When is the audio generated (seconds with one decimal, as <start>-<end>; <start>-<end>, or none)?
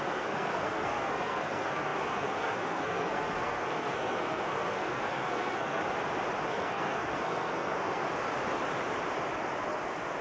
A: 0.0-5.8; 6.5-8.0